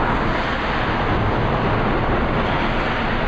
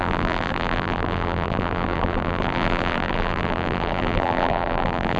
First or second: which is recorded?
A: first